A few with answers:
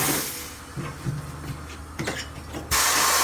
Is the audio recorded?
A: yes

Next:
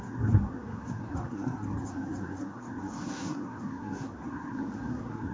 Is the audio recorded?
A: no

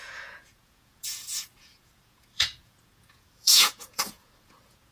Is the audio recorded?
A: no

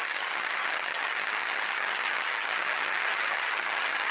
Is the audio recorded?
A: no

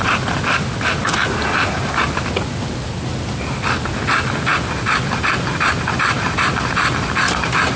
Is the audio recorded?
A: yes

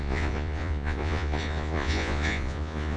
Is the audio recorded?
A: no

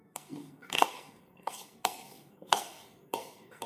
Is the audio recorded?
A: no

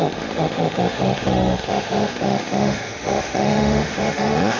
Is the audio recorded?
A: no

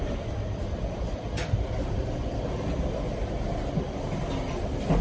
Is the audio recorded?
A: yes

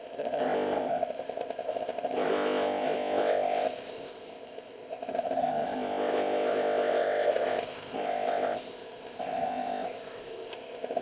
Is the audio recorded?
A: no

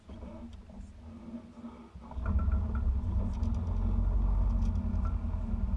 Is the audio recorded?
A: yes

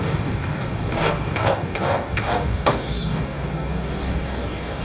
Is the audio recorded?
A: no